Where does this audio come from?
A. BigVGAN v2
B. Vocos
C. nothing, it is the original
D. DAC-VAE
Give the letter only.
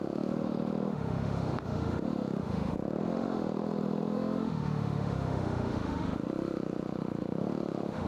D